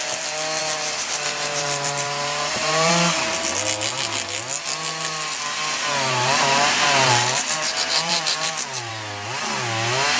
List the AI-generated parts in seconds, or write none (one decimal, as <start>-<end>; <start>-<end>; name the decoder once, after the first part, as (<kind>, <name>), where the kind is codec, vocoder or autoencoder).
0.6-2.9 (vocoder, BigVGAN v2); 5.9-8.9